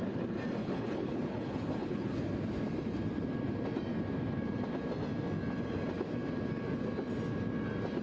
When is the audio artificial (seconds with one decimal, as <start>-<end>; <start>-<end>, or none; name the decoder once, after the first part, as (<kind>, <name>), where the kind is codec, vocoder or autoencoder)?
0.6-2.2 (codec, HILCodec)